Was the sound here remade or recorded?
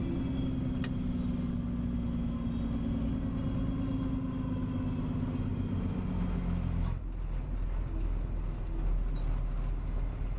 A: recorded